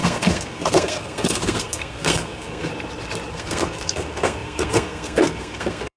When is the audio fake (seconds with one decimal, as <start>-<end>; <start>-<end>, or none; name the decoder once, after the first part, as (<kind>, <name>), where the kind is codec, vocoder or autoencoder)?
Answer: 0.0-2.7 (codec, SNAC); 3.3-6.0

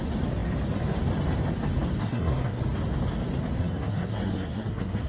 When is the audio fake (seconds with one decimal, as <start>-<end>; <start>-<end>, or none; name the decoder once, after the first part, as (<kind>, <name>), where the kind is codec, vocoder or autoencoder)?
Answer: 2.0-2.6 (codec, SNAC); 3.6-5.1